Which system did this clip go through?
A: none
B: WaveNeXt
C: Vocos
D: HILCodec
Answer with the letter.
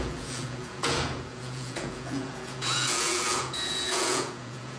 C